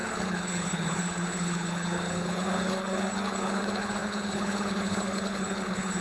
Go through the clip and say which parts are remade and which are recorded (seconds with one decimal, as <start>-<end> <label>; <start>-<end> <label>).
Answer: 0.0-6.0 remade